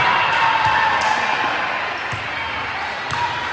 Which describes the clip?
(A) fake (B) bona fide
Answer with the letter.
B